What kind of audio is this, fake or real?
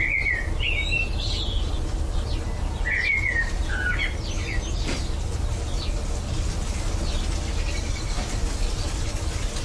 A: real